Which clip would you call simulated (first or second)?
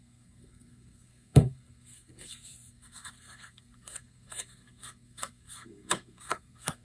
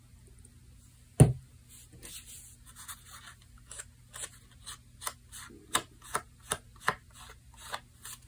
first